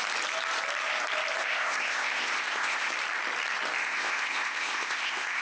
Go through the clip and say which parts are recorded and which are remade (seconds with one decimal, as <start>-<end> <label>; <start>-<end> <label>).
0.0-1.4 recorded; 1.4-2.9 remade; 2.9-3.8 recorded; 3.8-5.4 remade